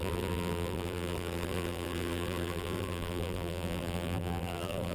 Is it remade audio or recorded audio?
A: remade